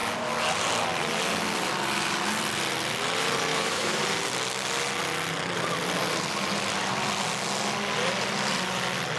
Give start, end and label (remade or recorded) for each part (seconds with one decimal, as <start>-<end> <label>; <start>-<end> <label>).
0.0-3.5 recorded; 3.5-4.0 remade; 4.0-9.2 recorded